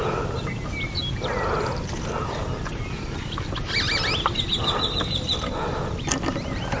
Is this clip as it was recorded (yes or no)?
yes